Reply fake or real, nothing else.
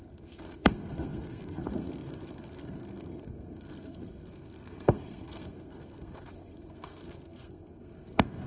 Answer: fake